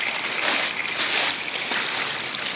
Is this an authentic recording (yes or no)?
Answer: no